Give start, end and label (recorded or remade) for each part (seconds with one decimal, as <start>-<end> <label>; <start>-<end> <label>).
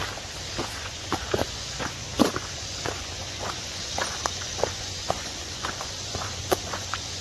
0.0-0.6 recorded; 0.6-7.2 remade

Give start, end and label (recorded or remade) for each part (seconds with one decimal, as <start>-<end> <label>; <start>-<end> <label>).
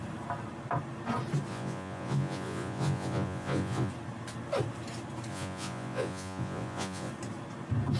0.0-1.5 recorded; 1.5-3.9 remade; 3.9-5.3 recorded; 5.3-7.1 remade; 7.1-8.0 recorded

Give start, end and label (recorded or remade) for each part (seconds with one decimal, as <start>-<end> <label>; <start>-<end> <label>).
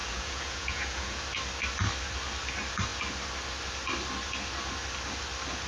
0.0-1.2 remade; 1.2-5.7 recorded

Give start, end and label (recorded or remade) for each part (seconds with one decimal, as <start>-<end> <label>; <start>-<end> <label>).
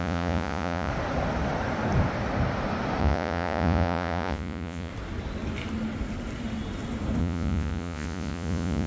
0.0-0.9 remade; 0.9-3.0 recorded; 3.0-4.9 remade; 4.9-7.2 recorded; 7.2-8.9 remade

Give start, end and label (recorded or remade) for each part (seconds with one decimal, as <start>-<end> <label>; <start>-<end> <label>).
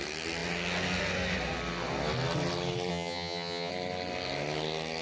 0.0-2.9 recorded; 2.9-3.7 remade; 3.7-5.0 recorded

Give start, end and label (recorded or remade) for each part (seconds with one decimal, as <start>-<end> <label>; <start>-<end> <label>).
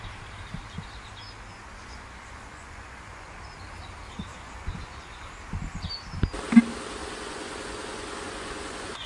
0.0-1.5 recorded; 1.5-3.4 remade; 3.4-4.3 recorded; 4.3-5.3 remade; 5.3-7.0 recorded; 7.0-9.1 remade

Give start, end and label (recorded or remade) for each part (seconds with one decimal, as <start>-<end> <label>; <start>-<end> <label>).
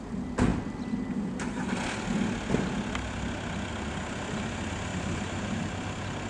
0.0-4.9 recorded; 4.9-5.6 remade; 5.6-6.3 recorded